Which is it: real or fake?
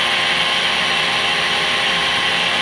real